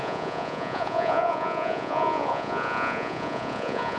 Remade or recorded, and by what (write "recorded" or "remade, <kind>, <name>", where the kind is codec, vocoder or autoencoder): remade, vocoder, Vocos